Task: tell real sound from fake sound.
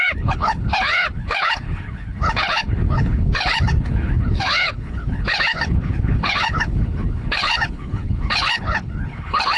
fake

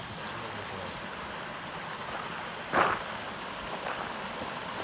real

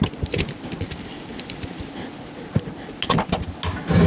real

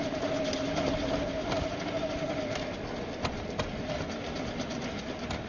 real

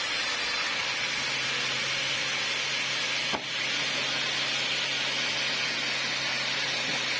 real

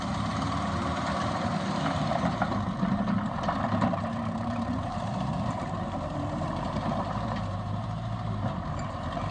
fake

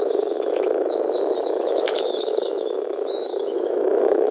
fake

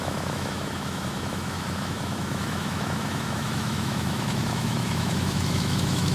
fake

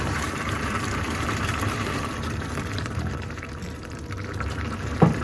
fake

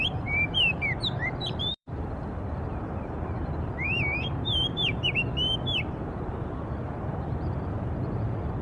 fake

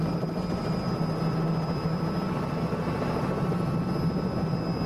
real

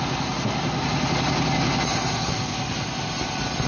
real